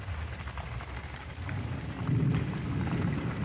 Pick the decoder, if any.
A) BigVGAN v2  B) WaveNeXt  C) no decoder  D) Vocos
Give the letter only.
C